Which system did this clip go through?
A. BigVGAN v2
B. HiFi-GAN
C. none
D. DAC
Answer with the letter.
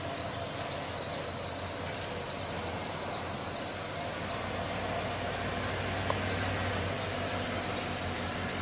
C